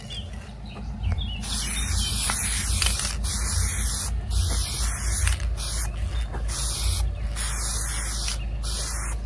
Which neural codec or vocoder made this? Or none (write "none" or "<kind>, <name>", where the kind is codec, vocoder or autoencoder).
none